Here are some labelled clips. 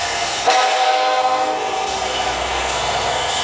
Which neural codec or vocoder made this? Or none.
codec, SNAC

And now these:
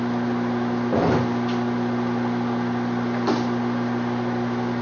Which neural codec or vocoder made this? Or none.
none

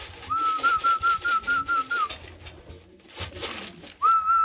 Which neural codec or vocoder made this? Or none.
none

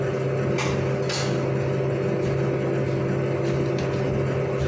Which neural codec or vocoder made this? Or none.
none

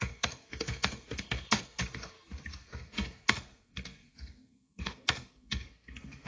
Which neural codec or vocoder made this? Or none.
codec, SNAC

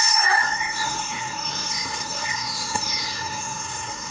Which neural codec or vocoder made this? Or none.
codec, SNAC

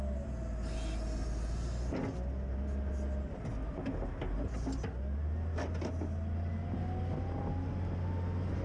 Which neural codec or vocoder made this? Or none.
none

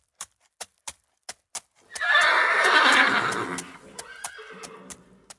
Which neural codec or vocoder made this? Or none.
none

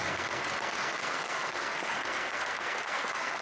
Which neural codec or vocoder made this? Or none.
codec, SNAC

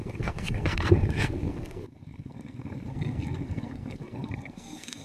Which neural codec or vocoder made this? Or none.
codec, SNAC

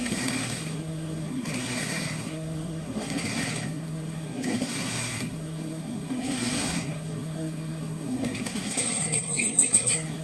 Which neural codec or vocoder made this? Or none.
codec, SNAC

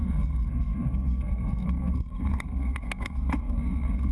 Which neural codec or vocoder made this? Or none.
codec, SNAC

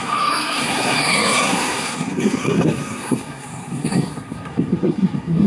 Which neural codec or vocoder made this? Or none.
codec, SNAC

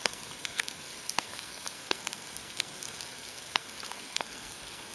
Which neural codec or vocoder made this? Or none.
codec, SNAC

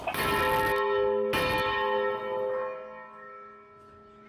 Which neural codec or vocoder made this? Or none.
none